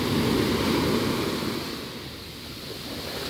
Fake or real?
real